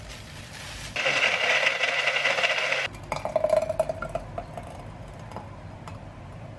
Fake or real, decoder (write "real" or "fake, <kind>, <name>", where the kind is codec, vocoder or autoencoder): real